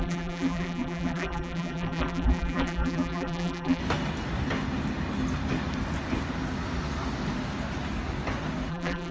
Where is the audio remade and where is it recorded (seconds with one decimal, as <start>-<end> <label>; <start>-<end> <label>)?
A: 0.0-3.8 remade; 3.8-8.7 recorded; 8.7-9.1 remade